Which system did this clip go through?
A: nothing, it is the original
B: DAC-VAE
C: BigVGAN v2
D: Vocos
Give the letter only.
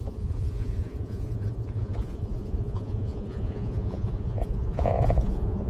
D